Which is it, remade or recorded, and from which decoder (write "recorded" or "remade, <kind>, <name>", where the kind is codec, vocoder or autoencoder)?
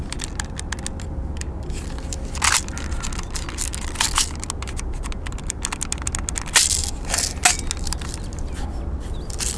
recorded